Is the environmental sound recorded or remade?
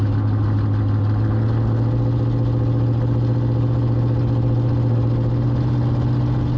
recorded